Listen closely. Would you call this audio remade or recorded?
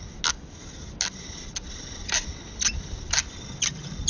recorded